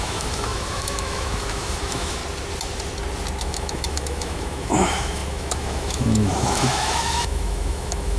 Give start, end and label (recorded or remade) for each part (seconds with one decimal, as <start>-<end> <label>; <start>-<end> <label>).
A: 0.0-2.2 remade; 2.2-3.4 recorded; 3.4-8.2 remade